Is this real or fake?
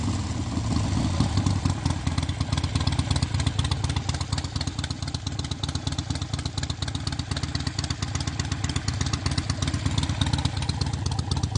real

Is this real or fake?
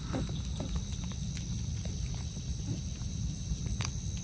real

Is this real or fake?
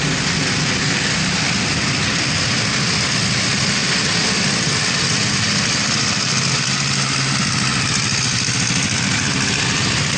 real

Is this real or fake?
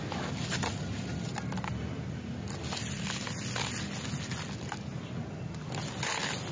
real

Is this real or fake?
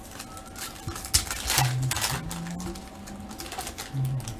real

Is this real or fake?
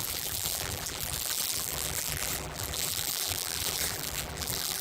fake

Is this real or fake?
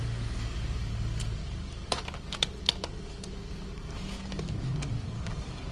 fake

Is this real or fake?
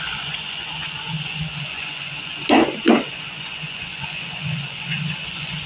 fake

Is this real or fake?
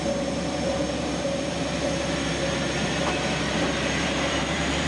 fake